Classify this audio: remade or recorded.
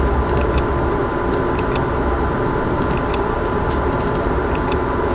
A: remade